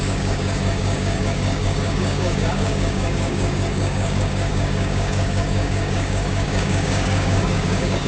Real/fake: fake